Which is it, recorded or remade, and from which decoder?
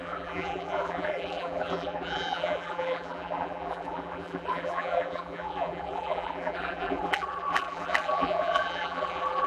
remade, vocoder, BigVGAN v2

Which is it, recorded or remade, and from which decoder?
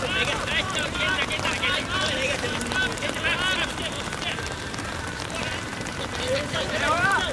remade, vocoder, BigVGAN v2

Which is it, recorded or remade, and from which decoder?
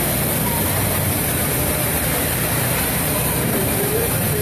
remade, vocoder, BigVGAN v2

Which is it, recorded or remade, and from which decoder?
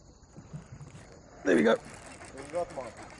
recorded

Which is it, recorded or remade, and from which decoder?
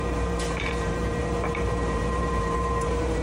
remade, vocoder, BigVGAN v2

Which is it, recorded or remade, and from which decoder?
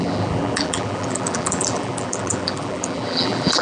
remade, vocoder, BigVGAN v2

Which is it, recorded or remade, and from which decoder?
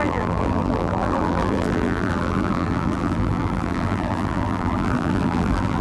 remade, vocoder, BigVGAN v2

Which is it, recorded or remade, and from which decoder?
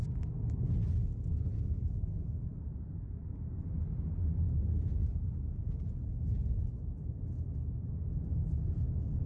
recorded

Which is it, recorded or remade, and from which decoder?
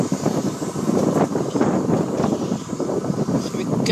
remade, vocoder, BigVGAN v2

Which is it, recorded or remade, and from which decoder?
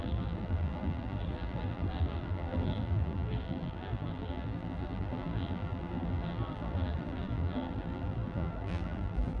remade, vocoder, BigVGAN v2